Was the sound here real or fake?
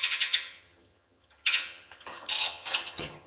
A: fake